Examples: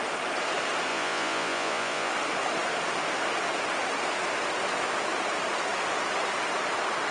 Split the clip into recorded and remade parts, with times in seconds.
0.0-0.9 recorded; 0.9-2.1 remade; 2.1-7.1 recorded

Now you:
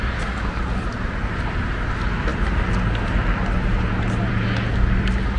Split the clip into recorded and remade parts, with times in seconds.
0.0-5.4 recorded

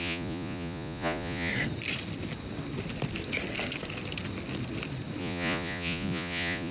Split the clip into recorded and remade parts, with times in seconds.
0.0-1.5 remade; 1.5-5.2 recorded; 5.2-6.7 remade

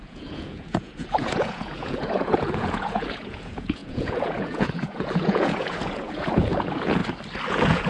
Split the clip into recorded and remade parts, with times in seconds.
0.0-7.0 remade; 7.0-7.5 recorded; 7.5-7.9 remade

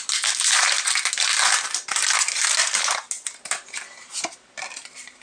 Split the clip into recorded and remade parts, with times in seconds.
0.0-5.2 recorded

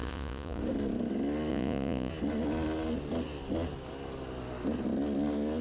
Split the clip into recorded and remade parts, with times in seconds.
0.0-0.6 remade; 0.6-1.5 recorded; 1.5-2.1 remade; 2.1-5.6 recorded

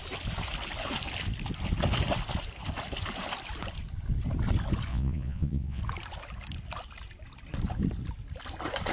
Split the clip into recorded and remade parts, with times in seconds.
0.0-4.9 recorded; 4.9-5.8 remade; 5.8-8.9 recorded